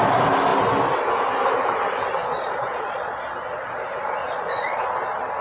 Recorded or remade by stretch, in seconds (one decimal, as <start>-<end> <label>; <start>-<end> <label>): 0.0-2.2 recorded; 2.2-3.2 remade; 3.2-4.2 recorded; 4.2-4.8 remade; 4.8-5.4 recorded